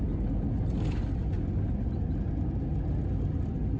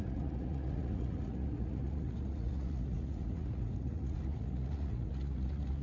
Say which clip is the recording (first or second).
first